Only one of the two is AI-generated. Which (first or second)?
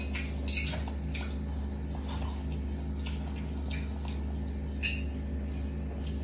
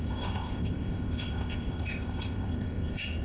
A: second